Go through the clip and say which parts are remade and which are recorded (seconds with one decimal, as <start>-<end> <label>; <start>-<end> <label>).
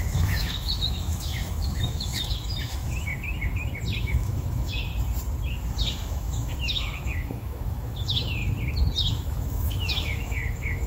0.0-3.1 remade; 3.1-4.0 recorded; 4.0-4.9 remade; 4.9-6.1 recorded; 6.1-8.4 remade; 8.4-9.1 recorded; 9.1-10.9 remade